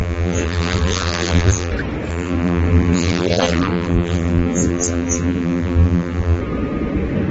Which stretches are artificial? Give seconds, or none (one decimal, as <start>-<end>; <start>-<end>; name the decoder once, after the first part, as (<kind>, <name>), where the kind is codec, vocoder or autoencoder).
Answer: 0.0-1.7 (vocoder, BigVGAN v2); 2.1-6.4